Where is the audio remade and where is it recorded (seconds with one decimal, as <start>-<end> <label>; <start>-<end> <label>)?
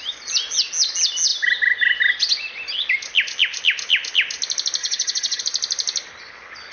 0.0-4.8 recorded; 4.8-5.4 remade; 5.4-6.7 recorded